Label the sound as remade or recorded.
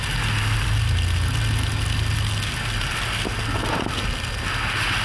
recorded